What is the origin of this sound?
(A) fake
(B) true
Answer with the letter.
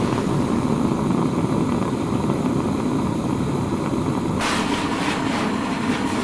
B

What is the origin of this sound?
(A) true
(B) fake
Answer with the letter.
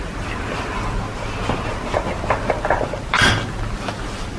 A